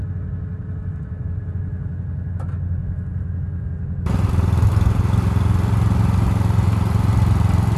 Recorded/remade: recorded